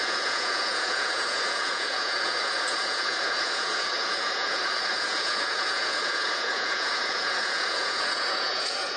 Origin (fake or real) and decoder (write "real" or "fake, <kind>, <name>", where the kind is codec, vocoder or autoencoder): fake, vocoder, Vocos